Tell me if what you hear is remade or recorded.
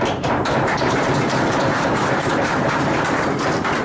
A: remade